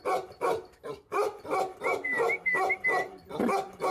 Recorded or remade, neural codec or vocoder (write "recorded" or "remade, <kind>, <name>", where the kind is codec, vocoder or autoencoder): recorded